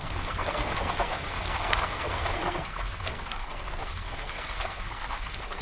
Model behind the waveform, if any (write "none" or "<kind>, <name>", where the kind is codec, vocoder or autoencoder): codec, SNAC